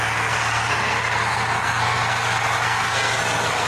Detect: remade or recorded remade